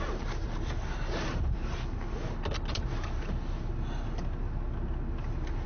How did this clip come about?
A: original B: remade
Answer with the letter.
A